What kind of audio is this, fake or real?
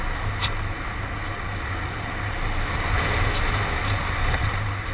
real